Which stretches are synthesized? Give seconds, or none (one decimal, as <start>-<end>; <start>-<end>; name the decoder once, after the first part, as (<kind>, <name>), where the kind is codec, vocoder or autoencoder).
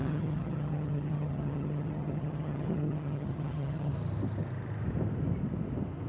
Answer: 0.0-3.9 (vocoder, HiFi-GAN)